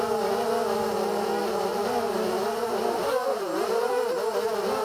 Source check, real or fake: real